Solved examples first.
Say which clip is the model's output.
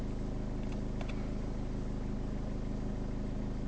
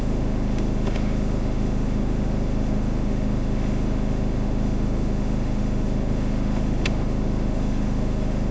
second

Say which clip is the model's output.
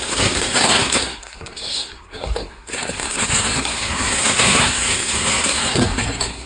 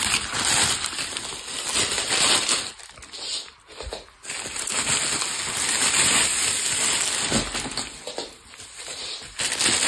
first